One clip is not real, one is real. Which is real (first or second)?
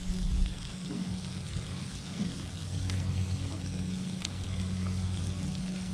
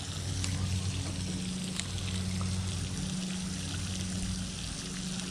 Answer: second